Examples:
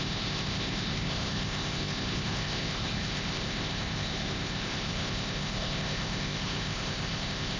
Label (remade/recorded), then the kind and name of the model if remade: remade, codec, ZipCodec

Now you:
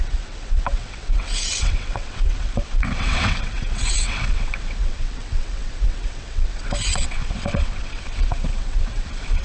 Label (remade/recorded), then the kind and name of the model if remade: remade, vocoder, WaveNeXt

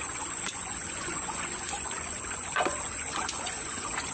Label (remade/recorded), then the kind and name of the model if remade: remade, vocoder, Vocos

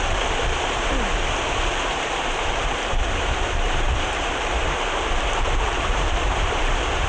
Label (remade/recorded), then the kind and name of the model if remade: remade, vocoder, BigVGAN v2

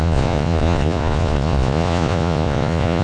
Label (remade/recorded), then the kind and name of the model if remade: remade, vocoder, Vocos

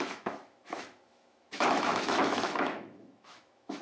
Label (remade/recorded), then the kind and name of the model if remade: remade, autoencoder, DAC-VAE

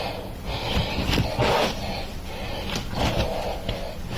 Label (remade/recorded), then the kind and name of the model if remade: recorded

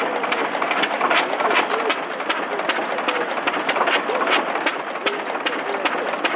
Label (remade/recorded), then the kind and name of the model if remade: recorded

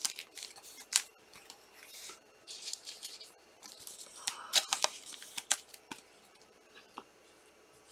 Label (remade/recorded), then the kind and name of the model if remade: remade, vocoder, BigVGAN v2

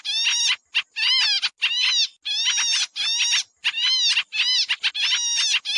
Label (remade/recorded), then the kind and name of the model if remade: recorded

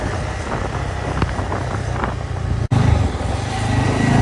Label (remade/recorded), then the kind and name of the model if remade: remade, vocoder, BigVGAN v2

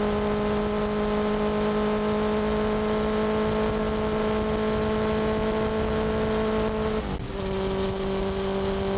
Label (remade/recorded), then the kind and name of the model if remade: recorded